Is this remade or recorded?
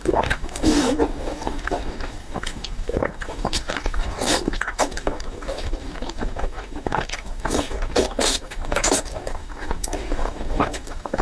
remade